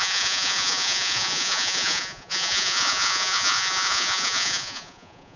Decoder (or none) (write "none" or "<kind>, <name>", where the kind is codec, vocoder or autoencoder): vocoder, Vocos